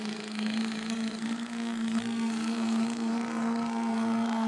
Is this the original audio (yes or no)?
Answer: no